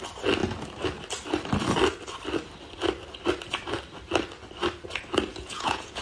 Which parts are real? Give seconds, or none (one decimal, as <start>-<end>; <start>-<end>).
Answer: 0.0-5.3